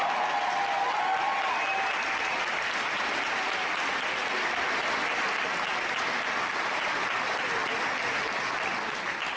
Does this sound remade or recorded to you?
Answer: recorded